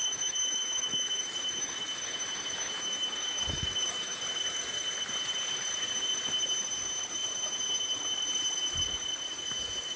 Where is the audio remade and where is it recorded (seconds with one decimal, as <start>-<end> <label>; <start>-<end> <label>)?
0.0-4.2 remade; 4.2-10.0 recorded